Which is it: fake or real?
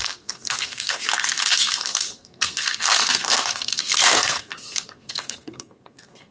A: fake